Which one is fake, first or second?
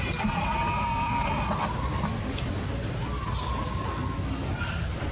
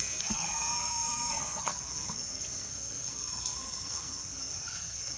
second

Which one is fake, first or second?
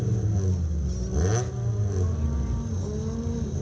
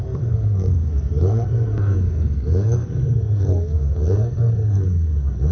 second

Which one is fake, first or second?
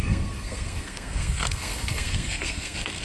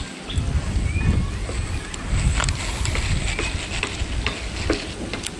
first